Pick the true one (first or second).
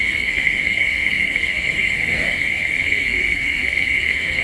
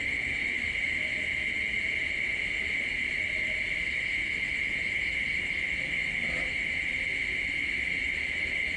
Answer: second